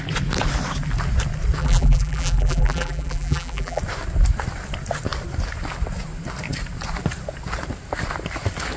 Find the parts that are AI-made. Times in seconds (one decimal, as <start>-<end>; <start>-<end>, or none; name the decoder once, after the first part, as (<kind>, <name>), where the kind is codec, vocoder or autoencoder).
1.6-3.8 (vocoder, BigVGAN v2)